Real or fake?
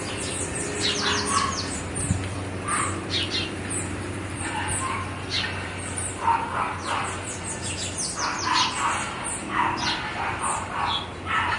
real